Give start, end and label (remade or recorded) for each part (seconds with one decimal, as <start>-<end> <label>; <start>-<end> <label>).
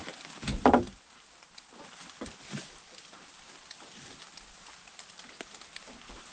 0.0-6.3 recorded